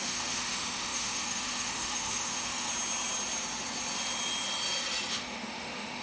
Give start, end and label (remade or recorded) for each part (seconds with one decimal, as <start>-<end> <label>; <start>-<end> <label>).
0.0-2.7 remade; 2.7-5.1 recorded; 5.1-6.0 remade

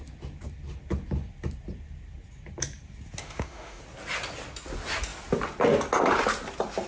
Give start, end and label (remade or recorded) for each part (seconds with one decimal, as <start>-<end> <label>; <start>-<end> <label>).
0.0-3.2 recorded; 3.2-3.8 remade; 3.8-6.9 recorded